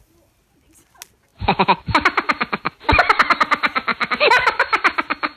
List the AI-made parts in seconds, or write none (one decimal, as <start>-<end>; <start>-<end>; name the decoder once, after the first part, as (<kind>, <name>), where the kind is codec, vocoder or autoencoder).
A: 3.9-4.8 (vocoder, BigVGAN v2)